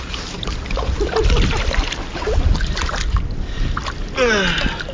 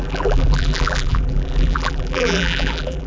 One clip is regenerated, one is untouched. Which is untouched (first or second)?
first